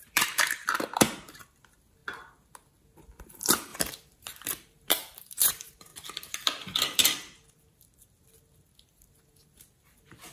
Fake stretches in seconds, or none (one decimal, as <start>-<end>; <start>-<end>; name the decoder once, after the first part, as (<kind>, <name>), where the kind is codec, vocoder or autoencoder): 0.0-2.0 (vocoder, BigVGAN v2); 3.2-5.9; 8.9-10.3